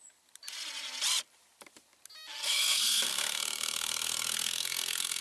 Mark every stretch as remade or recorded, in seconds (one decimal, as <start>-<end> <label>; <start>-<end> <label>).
0.0-2.4 recorded; 2.4-5.2 remade